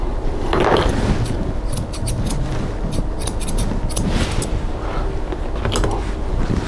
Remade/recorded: recorded